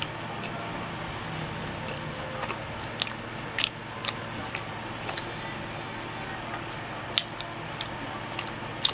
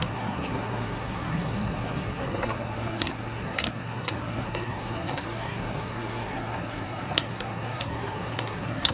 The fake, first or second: second